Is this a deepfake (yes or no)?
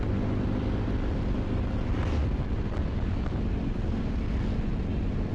no